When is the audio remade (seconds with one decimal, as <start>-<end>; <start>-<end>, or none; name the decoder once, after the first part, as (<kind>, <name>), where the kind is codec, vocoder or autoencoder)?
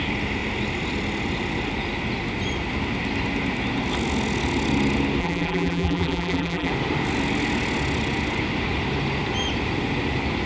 5.2-6.7 (vocoder, BigVGAN v2)